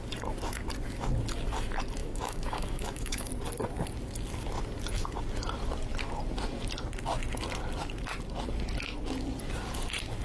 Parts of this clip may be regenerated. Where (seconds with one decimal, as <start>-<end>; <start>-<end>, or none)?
2.0-3.3